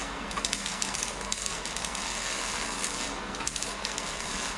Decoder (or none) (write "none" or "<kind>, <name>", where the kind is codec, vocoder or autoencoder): codec, SNAC